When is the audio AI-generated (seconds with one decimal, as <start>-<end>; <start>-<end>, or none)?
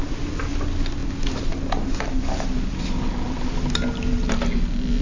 none